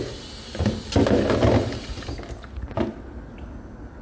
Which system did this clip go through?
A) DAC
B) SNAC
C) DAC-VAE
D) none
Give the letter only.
D